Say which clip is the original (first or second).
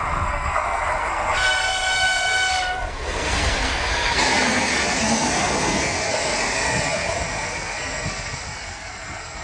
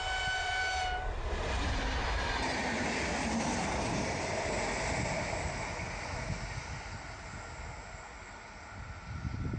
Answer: second